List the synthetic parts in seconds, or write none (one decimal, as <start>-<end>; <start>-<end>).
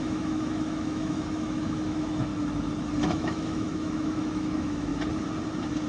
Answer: 0.0-2.3; 3.0-4.9